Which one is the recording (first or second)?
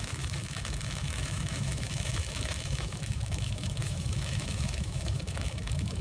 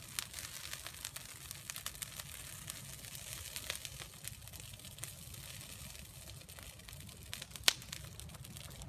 second